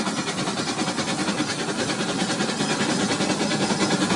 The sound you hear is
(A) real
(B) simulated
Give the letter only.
A